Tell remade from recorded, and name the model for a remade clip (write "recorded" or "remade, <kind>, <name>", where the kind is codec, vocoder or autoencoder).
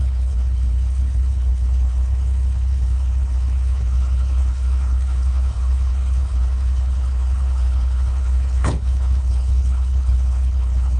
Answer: remade, codec, HILCodec